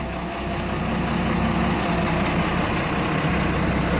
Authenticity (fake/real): real